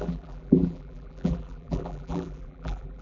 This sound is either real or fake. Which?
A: fake